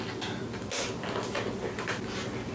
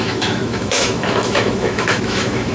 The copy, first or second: second